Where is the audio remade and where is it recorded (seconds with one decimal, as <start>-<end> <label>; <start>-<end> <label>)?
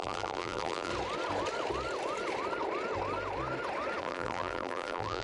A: 0.0-0.9 remade; 0.9-4.0 recorded; 4.0-5.2 remade